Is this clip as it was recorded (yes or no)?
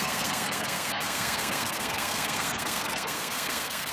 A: no